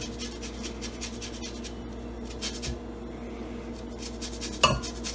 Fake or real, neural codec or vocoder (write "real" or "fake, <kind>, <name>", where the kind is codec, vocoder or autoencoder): real